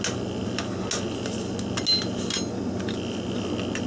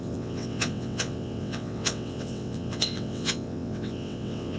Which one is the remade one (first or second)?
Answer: second